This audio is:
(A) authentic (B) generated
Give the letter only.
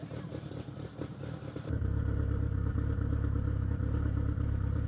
B